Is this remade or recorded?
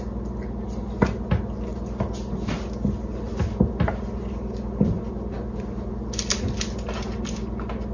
recorded